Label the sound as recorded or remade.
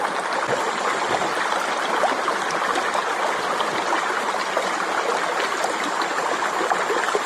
recorded